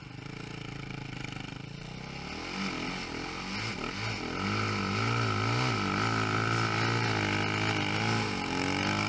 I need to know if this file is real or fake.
real